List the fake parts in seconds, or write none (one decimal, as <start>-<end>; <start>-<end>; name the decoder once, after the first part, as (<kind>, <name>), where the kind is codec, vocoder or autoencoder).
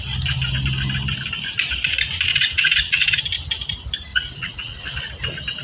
2.3-3.2 (vocoder, WaveNeXt); 4.1-5.1